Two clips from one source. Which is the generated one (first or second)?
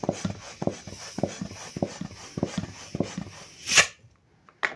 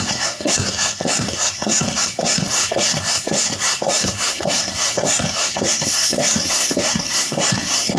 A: second